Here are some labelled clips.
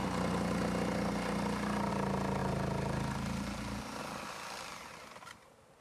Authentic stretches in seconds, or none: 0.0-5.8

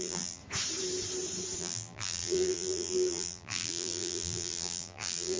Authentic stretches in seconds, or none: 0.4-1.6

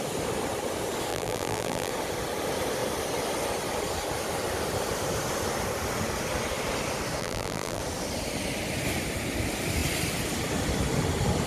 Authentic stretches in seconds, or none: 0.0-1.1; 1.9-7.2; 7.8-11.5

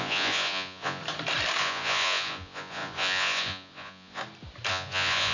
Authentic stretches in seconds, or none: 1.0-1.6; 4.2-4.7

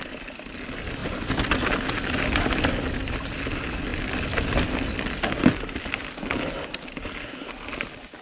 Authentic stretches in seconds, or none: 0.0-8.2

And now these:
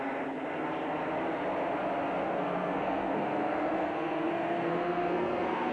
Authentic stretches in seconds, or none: 0.0-2.2